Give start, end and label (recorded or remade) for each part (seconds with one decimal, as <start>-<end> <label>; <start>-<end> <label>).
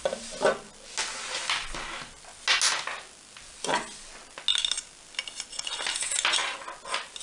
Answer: 0.0-7.2 recorded